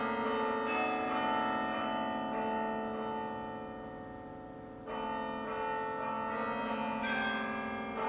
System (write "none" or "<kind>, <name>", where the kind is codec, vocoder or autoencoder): none